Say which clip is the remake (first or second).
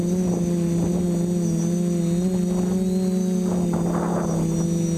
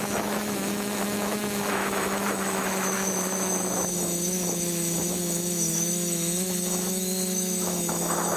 second